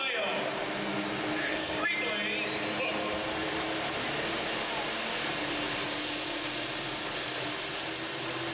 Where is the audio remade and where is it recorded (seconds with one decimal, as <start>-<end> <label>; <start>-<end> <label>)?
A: 0.0-1.4 recorded; 1.4-1.9 remade; 1.9-8.5 recorded